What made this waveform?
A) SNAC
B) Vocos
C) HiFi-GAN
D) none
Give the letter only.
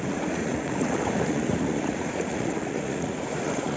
B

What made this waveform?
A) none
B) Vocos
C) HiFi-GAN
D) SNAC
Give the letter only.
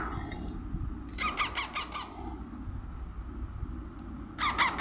A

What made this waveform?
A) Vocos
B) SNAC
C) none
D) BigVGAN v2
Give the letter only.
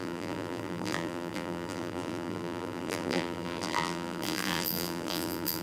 D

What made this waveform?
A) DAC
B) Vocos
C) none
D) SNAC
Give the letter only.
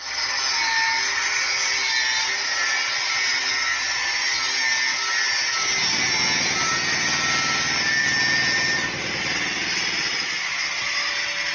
C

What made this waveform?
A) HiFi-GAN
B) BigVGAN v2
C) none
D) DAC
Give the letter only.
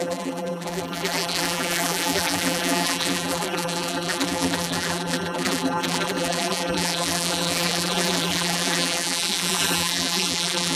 B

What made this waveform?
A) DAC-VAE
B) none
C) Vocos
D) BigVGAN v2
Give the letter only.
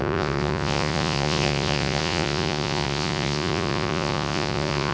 C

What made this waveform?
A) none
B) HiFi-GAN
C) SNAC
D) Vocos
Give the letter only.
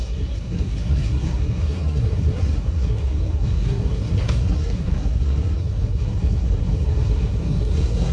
C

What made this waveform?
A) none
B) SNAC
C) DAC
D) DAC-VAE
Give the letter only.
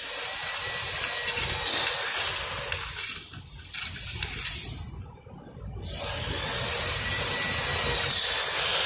A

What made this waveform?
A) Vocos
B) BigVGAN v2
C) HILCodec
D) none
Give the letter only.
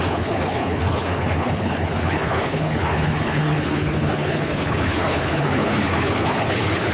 C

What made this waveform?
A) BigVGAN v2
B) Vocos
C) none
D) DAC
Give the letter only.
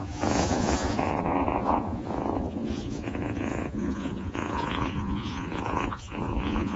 B